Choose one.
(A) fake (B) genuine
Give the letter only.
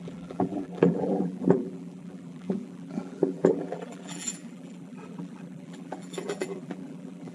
A